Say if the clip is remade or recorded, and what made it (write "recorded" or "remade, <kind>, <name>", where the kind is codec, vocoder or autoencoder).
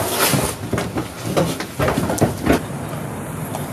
recorded